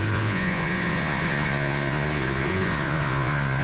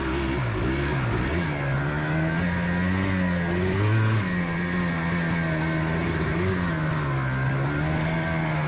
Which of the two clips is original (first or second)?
second